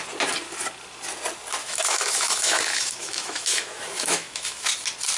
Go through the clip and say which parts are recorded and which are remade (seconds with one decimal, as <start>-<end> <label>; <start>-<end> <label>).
0.0-1.6 recorded; 1.6-4.7 remade; 4.7-5.2 recorded